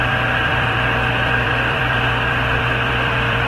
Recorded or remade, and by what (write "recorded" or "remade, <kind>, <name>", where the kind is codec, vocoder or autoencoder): remade, vocoder, BigVGAN v2